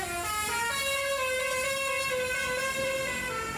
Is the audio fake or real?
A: real